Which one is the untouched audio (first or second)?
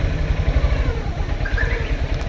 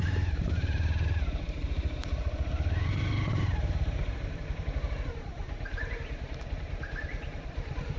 first